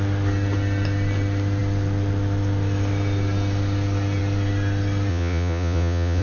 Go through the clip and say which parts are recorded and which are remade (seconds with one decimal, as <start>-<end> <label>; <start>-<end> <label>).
0.0-5.1 recorded; 5.1-6.2 remade